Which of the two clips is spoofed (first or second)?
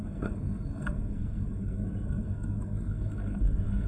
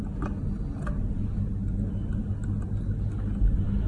first